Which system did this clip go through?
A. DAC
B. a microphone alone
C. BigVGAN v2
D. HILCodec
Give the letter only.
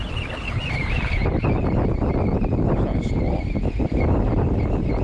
B